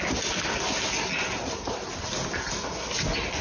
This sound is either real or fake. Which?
real